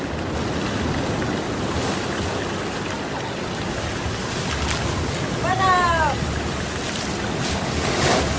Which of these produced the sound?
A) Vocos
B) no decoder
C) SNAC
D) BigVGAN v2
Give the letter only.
B